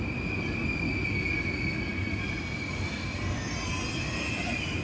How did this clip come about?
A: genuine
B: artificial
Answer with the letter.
A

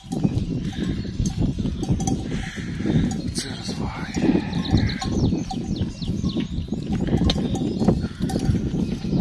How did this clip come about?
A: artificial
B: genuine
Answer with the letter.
B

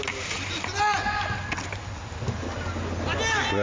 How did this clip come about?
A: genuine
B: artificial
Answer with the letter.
A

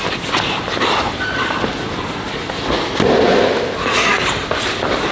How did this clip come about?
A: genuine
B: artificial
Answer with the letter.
A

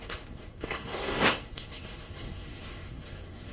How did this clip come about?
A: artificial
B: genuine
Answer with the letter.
A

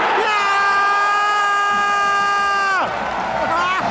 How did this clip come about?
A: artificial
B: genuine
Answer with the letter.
B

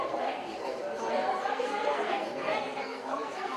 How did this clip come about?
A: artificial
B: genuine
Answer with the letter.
A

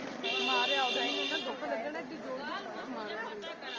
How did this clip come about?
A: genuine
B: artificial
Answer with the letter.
A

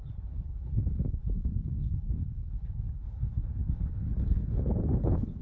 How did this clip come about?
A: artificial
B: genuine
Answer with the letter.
A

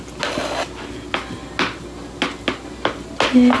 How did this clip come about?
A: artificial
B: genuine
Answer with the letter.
B